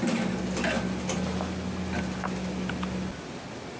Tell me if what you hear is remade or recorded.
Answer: recorded